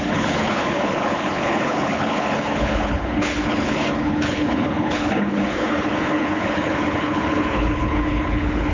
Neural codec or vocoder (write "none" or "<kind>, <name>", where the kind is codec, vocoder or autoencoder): codec, HILCodec